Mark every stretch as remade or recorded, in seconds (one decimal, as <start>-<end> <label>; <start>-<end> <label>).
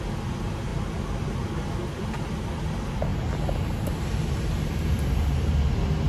0.0-6.1 recorded